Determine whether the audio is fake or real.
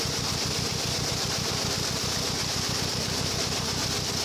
real